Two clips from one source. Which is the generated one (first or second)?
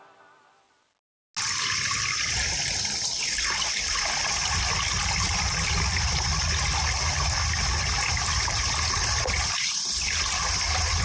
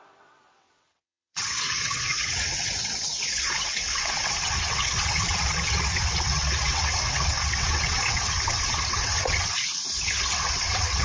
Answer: second